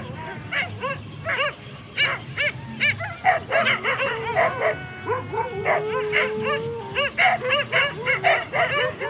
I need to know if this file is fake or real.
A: real